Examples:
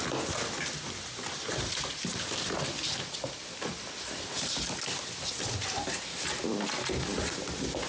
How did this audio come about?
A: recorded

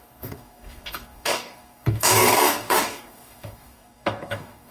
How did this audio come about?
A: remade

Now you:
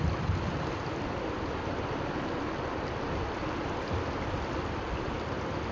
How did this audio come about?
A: recorded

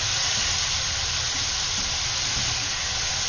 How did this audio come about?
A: recorded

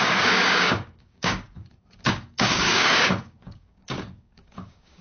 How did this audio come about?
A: remade